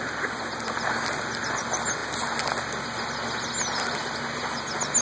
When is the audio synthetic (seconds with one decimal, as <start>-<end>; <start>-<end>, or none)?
none

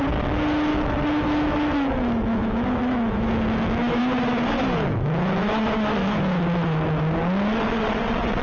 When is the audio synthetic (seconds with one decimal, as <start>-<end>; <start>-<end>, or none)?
0.7-4.0; 4.9-6.2